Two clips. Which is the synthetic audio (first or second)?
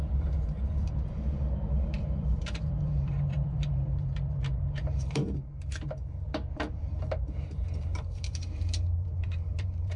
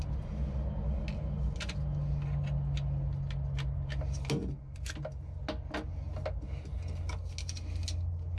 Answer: first